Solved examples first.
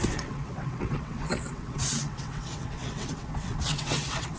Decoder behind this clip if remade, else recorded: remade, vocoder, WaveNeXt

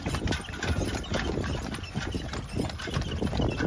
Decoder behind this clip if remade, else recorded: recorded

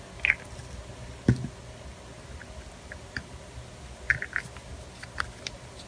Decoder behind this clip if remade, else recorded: recorded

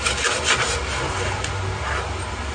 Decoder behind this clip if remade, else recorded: recorded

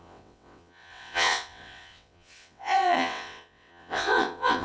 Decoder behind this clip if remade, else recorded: remade, vocoder, WaveNeXt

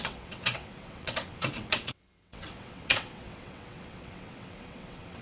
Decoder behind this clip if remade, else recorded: remade, vocoder, WaveNeXt